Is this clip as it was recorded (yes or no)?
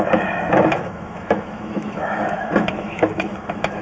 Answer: no